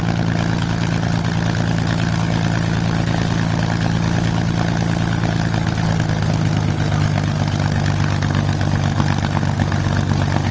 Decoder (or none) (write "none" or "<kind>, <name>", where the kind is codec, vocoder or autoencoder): none